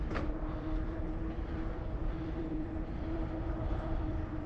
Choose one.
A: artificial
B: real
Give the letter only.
A